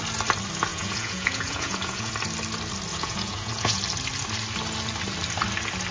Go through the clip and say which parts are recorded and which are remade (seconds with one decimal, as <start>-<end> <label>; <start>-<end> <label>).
0.0-0.7 recorded; 0.7-2.1 remade; 2.1-2.9 recorded; 2.9-3.8 remade; 3.8-5.9 recorded